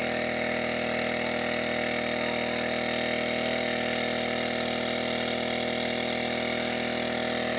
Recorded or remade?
recorded